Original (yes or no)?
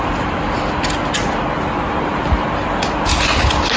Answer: yes